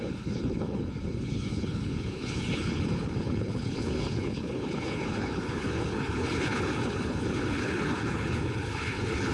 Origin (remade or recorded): remade